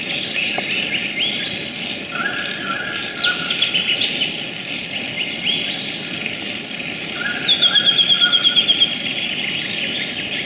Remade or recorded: recorded